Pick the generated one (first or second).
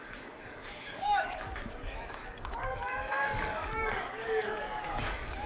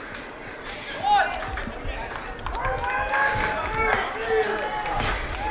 first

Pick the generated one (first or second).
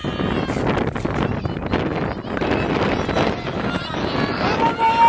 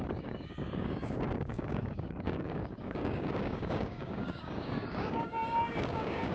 second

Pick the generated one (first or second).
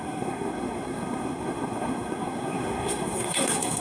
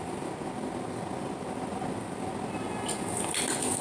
first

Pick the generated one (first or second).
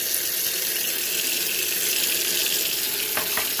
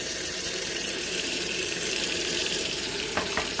second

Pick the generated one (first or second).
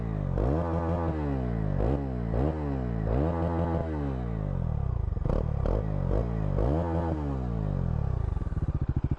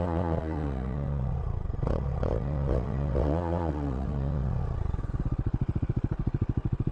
second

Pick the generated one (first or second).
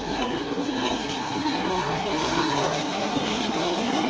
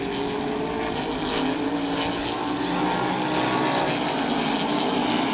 first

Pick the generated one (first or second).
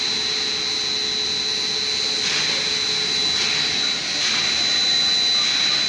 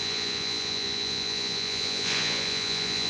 second